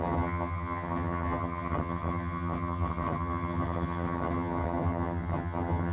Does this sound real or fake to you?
fake